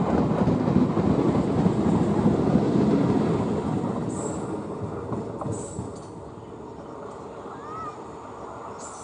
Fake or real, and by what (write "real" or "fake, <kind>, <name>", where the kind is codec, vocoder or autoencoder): real